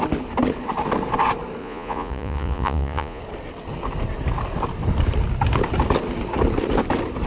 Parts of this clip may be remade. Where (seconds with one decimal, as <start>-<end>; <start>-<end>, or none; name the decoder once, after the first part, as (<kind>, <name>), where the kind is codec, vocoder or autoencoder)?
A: 1.6-3.2 (vocoder, Vocos)